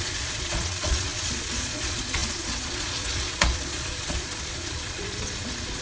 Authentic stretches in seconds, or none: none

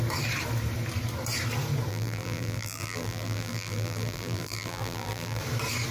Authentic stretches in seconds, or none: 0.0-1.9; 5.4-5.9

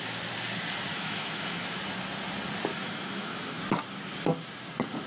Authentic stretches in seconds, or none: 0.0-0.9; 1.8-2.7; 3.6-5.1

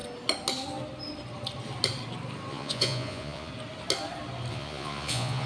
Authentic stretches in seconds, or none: 0.0-2.5; 3.5-4.5

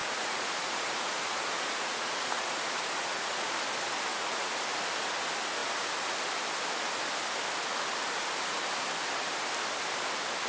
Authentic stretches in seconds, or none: 3.5-4.1; 4.6-10.5